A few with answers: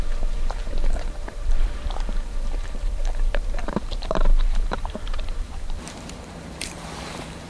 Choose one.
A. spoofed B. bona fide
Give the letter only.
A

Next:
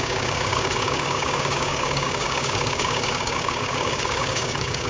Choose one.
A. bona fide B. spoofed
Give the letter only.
B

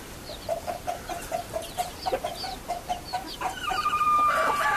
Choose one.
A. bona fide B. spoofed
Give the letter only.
B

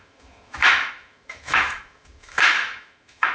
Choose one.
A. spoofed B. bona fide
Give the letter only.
A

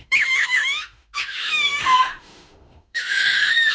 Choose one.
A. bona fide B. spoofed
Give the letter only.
B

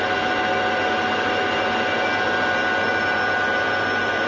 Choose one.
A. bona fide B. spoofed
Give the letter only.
A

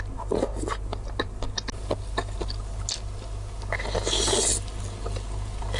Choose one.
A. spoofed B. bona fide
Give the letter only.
B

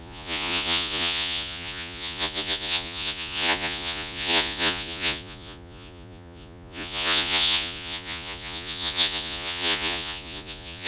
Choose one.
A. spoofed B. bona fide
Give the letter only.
A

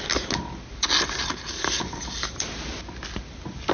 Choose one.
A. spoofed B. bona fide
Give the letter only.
B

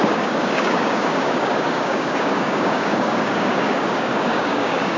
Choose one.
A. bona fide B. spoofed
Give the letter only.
B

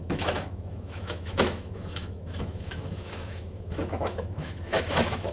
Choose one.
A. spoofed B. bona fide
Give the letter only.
A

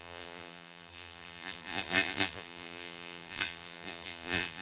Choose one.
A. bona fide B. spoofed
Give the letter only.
B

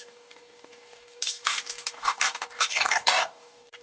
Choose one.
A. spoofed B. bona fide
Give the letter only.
A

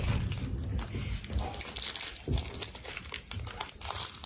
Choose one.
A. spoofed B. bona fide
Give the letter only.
B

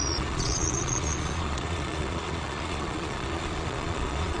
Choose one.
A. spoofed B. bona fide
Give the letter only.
A